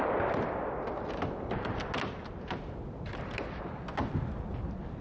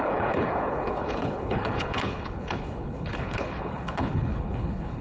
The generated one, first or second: second